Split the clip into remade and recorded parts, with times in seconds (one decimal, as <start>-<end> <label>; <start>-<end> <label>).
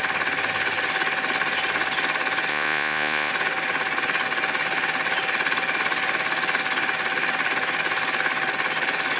0.0-2.5 recorded; 2.5-3.3 remade; 3.3-9.2 recorded